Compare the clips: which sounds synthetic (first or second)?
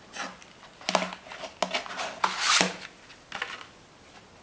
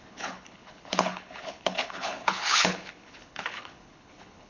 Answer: second